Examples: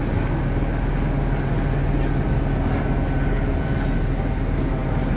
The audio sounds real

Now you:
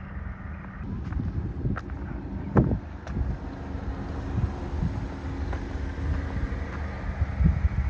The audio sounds real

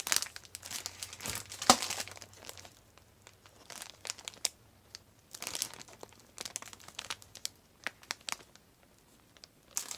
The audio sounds real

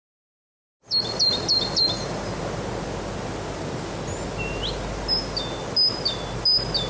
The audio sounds real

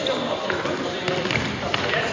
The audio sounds real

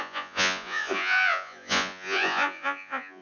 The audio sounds fake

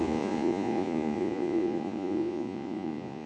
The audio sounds fake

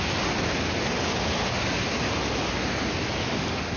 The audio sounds real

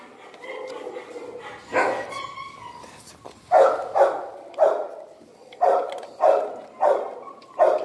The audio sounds real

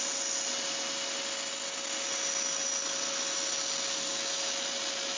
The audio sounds real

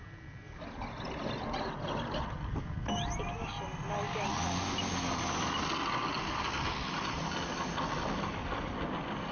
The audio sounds real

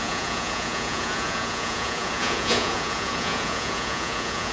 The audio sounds fake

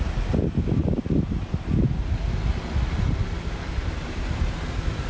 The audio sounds real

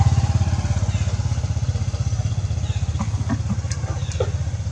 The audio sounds real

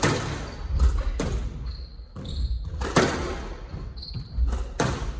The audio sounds real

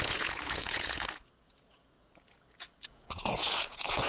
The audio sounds fake